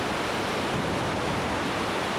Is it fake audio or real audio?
real